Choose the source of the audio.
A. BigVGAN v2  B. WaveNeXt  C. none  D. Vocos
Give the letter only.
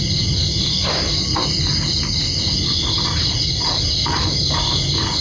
C